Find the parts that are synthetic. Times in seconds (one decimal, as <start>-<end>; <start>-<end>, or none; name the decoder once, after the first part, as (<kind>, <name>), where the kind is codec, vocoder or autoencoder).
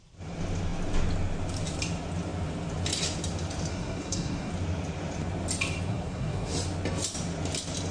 3.7-4.5 (codec, SNAC); 5.9-6.5